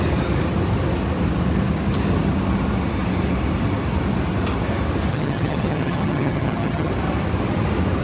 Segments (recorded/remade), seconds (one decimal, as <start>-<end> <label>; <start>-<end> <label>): 0.0-5.1 recorded; 5.1-6.9 remade; 6.9-8.0 recorded